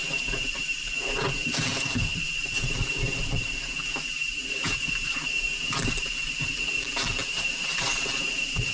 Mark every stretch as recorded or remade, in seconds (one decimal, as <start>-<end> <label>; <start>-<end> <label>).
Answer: 0.0-0.9 remade; 0.9-1.7 recorded; 1.7-6.6 remade; 6.6-7.2 recorded; 7.2-8.7 remade